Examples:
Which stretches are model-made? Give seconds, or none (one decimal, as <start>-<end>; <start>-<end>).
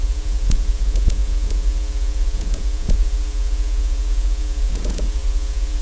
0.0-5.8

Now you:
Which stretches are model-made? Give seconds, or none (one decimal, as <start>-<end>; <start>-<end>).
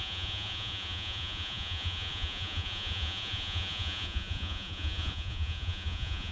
0.0-6.3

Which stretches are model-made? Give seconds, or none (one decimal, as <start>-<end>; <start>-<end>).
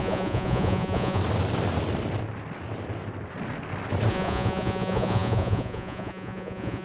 0.0-1.2; 4.1-6.8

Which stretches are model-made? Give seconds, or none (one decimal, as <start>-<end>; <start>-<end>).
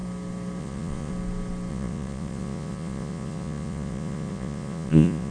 0.6-1.1; 1.7-5.3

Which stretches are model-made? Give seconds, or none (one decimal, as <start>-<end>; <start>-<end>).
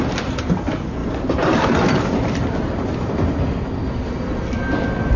none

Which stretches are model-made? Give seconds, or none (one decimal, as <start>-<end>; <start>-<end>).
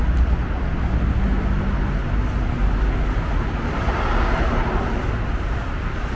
none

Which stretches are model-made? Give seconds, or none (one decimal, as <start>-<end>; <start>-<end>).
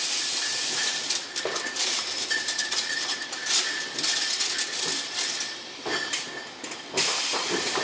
2.6-3.2